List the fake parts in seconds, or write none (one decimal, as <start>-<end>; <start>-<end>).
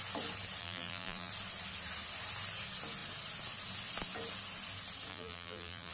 0.6-1.3; 5.1-5.9